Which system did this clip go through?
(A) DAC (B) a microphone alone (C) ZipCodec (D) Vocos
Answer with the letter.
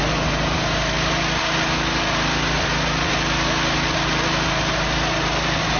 B